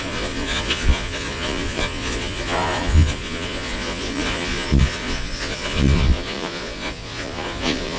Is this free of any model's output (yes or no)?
no